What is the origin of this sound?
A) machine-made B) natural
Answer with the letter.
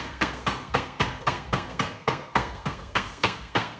A